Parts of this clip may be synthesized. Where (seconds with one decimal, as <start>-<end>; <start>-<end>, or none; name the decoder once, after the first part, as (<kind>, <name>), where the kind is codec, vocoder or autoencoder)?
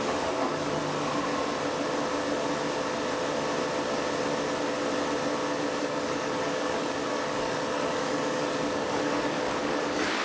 0.0-0.8 (codec, DAC); 5.8-10.2